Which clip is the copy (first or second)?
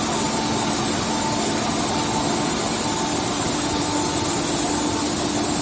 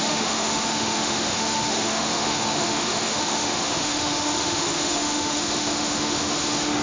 second